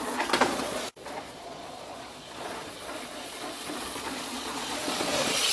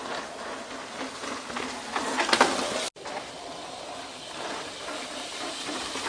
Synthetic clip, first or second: first